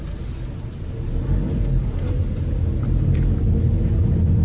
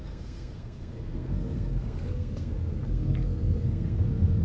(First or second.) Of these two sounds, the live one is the first